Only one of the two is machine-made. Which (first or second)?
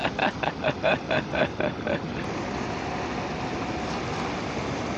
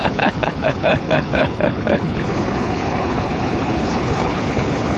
second